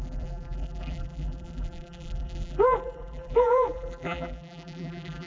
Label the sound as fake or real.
fake